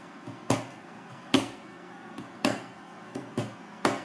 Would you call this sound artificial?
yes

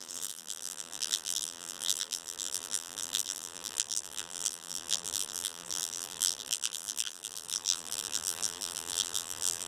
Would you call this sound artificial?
yes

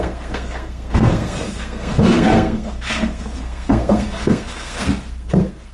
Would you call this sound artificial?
yes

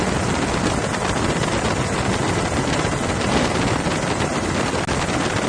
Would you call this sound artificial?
no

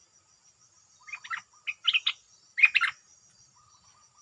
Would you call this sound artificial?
no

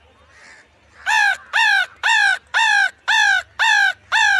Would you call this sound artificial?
no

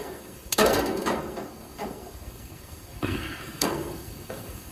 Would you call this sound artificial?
yes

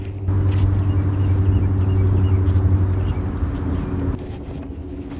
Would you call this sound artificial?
no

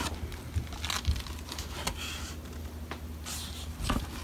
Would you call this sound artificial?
no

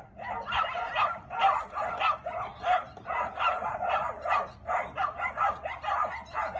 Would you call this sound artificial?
no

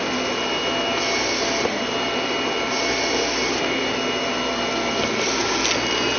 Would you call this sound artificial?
no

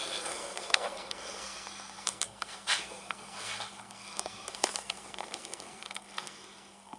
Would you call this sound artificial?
yes